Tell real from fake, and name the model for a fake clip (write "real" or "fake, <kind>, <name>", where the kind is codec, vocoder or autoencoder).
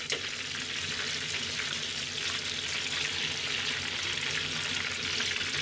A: real